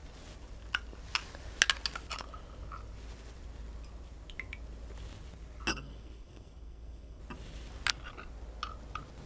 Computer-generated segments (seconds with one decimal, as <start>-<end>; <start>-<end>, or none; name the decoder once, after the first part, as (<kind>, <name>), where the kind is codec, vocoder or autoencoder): 5.7-7.2 (codec, SNAC)